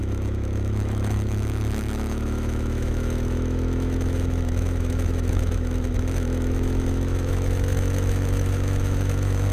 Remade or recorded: remade